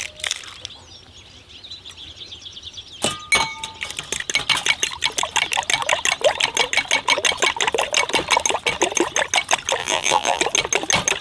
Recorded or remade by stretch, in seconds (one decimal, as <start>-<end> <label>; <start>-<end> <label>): 0.0-9.8 recorded; 9.8-10.4 remade; 10.4-11.2 recorded

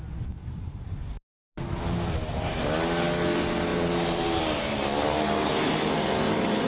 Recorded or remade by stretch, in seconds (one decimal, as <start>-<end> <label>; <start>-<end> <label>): 0.0-0.4 recorded; 0.4-1.0 remade; 1.0-3.7 recorded; 3.7-4.4 remade; 4.4-6.7 recorded

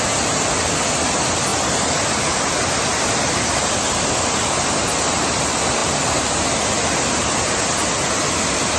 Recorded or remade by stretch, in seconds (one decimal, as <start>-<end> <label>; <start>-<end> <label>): 0.0-1.5 recorded; 1.5-3.2 remade; 3.2-8.8 recorded

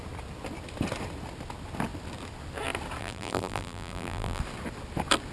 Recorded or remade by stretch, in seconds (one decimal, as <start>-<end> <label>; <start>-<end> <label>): 0.0-3.0 recorded; 3.0-4.4 remade; 4.4-5.3 recorded

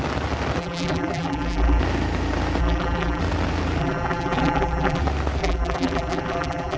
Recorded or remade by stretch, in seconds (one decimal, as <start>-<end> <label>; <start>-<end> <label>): 0.0-0.6 recorded; 0.6-1.8 remade; 1.8-2.6 recorded; 2.6-3.2 remade; 3.2-3.8 recorded; 3.8-5.0 remade; 5.0-5.4 recorded; 5.4-6.8 remade